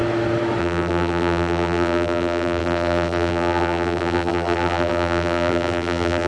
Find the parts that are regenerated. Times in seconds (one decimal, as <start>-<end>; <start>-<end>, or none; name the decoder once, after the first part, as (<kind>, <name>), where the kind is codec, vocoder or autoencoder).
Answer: 0.6-6.3 (vocoder, BigVGAN v2)